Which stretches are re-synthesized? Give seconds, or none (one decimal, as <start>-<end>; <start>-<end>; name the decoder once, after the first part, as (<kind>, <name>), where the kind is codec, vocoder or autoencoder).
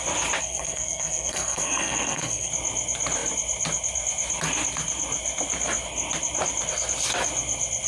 0.4-2.5 (codec, SNAC)